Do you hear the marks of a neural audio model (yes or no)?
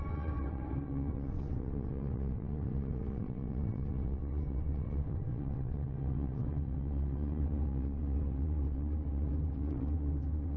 yes